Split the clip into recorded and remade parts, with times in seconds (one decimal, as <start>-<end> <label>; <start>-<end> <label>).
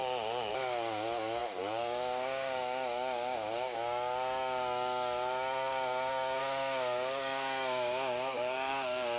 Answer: 0.0-9.2 remade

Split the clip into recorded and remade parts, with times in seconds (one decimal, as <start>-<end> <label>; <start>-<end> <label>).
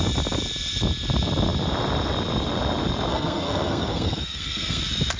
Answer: 0.0-3.1 recorded; 3.1-4.8 remade; 4.8-5.2 recorded